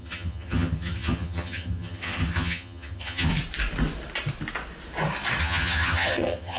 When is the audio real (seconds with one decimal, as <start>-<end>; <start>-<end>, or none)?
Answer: 3.3-5.4